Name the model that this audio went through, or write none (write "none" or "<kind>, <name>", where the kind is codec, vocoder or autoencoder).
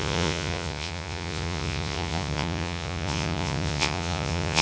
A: vocoder, Vocos